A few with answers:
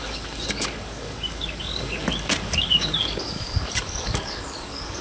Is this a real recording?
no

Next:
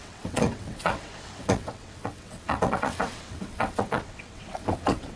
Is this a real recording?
no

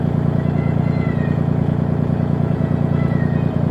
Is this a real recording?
no